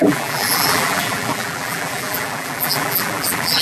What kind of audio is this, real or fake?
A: fake